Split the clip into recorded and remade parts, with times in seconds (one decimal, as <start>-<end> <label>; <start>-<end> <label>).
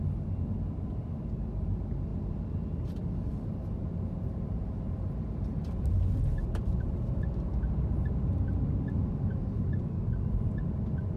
0.0-11.2 recorded